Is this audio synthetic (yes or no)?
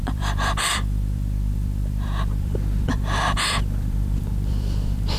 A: yes